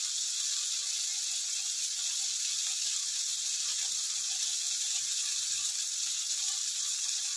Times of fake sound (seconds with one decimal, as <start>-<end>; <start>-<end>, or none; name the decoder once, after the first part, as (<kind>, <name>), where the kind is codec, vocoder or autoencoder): 1.1-1.8 (vocoder, Vocos)